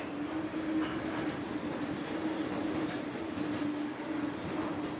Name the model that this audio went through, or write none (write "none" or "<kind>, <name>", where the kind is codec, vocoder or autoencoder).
none